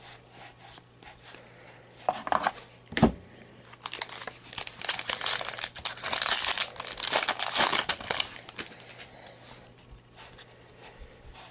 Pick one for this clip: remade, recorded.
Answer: recorded